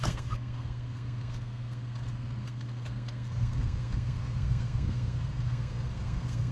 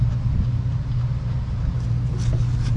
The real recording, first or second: second